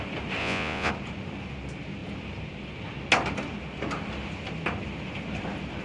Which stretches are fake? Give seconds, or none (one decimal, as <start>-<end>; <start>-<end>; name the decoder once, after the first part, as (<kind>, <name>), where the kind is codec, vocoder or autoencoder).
0.4-0.9 (vocoder, Vocos)